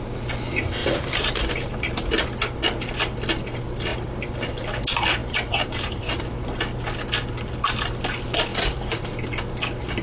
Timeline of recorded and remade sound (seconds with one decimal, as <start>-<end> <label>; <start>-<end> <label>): 0.0-0.8 recorded; 0.8-1.5 remade; 1.5-5.2 recorded; 5.2-6.2 remade; 6.2-8.5 recorded; 8.5-9.0 remade; 9.0-10.0 recorded

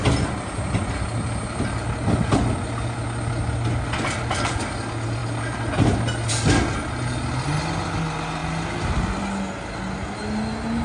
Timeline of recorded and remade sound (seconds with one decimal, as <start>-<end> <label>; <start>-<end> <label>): 0.0-10.8 recorded